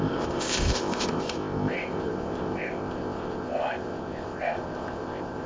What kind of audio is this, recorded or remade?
remade